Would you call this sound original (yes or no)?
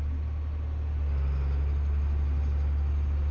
yes